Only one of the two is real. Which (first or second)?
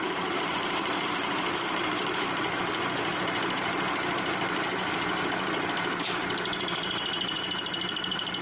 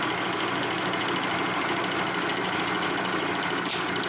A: second